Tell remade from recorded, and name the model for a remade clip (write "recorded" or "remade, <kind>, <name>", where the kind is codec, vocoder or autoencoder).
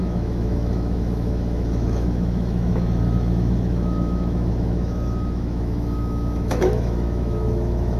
remade, autoencoder, DAC-VAE